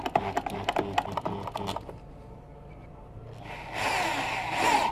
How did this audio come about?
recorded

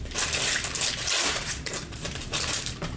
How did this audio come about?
remade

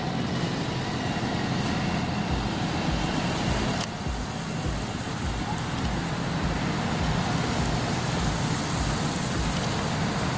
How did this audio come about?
recorded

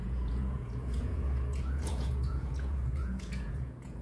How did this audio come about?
remade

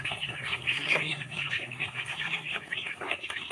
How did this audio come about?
remade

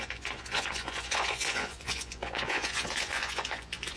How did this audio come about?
remade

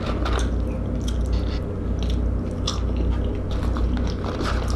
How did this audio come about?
recorded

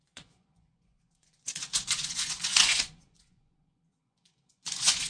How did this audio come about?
remade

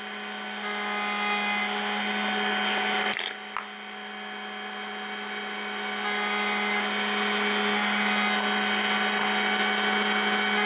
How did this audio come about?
recorded